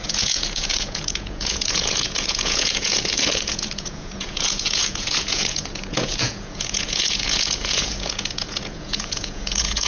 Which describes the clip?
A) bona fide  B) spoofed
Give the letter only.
B